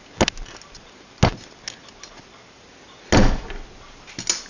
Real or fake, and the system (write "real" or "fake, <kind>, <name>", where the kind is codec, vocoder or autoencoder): real